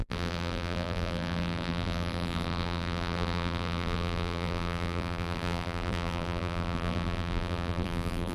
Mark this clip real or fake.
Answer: fake